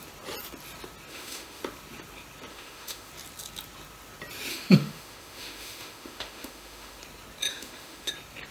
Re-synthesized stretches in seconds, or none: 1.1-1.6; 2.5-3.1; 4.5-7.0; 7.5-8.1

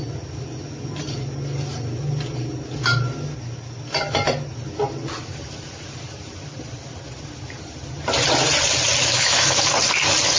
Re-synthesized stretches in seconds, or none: 9.0-9.6